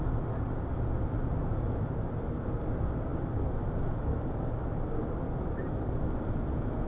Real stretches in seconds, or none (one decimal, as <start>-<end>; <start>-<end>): 0.0-6.9